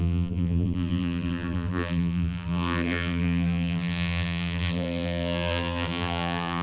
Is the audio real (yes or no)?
no